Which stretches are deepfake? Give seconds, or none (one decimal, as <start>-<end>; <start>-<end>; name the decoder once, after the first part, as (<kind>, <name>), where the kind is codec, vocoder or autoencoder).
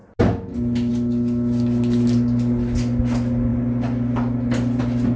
none